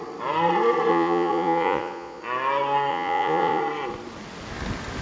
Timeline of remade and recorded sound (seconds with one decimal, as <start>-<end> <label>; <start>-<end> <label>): 0.0-0.9 recorded; 0.9-2.2 remade; 2.2-2.9 recorded; 2.9-3.6 remade; 3.6-5.0 recorded